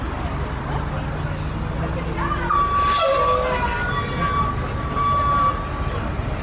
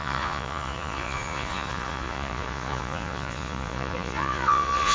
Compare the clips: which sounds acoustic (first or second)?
first